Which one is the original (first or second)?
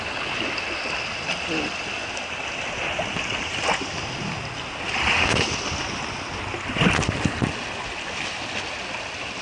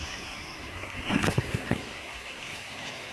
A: first